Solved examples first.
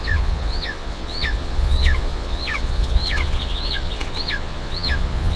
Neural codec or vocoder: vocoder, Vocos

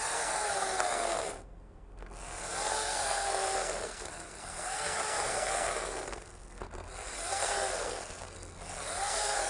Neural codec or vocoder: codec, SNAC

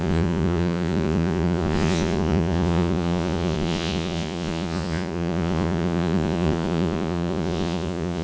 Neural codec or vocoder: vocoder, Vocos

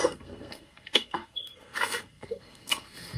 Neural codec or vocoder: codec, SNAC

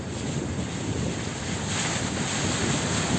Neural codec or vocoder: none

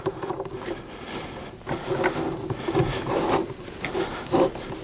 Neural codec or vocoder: none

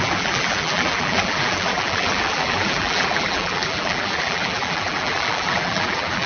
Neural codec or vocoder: vocoder, BigVGAN v2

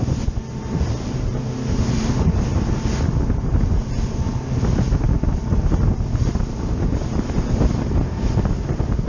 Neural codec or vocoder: none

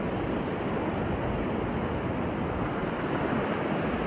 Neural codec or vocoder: none